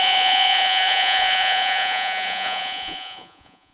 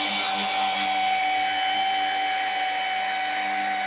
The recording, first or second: second